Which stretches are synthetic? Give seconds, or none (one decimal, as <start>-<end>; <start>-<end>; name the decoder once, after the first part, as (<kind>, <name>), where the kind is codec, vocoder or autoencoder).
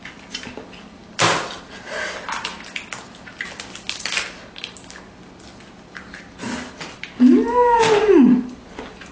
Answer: none